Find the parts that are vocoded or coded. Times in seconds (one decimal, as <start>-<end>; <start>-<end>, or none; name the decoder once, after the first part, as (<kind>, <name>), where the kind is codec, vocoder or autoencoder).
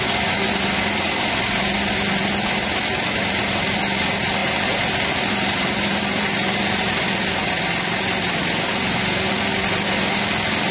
none